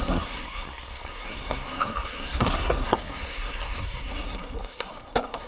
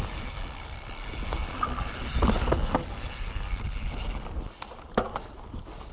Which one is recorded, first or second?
second